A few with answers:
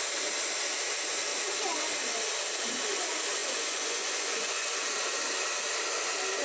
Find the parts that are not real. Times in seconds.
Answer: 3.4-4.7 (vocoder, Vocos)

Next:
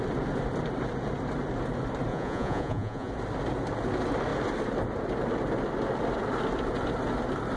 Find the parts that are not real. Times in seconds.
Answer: 2.1-3.1 (vocoder, Vocos)

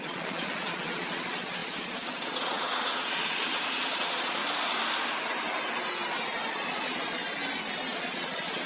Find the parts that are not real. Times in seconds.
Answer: 0.0-4.4 (vocoder, Vocos); 6.5-7.2; 7.9-8.7

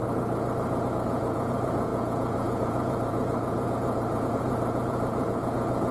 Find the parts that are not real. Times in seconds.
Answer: 0.9-5.9 (vocoder, Vocos)

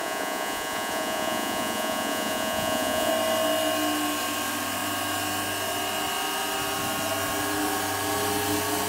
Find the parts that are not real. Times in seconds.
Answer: 0.0-3.1 (vocoder, Vocos)

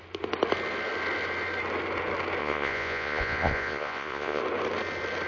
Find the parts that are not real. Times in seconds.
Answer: 2.4-4.4 (vocoder, Vocos)

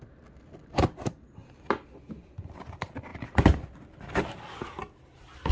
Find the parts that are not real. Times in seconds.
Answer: none

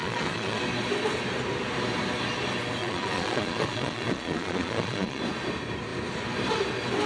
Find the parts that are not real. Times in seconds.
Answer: 0.0-0.6 (vocoder, Vocos); 2.8-5.2